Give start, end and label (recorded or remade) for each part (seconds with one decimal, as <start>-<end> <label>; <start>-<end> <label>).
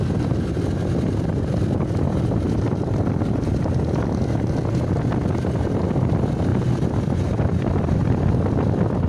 0.0-9.1 recorded